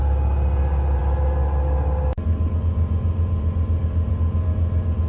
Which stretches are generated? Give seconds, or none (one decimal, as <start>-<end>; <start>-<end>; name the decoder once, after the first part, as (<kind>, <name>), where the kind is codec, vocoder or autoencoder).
none